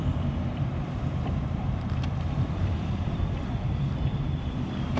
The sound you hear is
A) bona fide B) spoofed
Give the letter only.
B